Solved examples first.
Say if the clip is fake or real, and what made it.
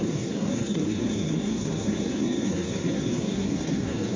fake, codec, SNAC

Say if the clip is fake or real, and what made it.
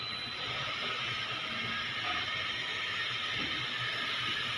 real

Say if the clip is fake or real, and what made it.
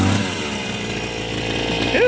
real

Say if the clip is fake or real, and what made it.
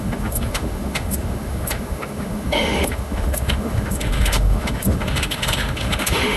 fake, autoencoder, DAC-VAE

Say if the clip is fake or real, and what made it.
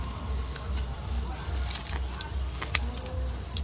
real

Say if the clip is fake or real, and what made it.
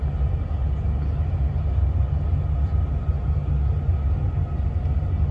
real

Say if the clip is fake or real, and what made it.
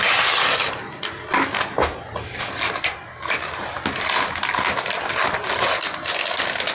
real